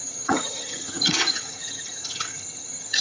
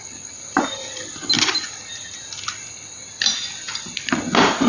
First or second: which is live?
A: second